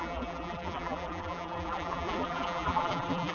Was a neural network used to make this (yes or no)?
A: yes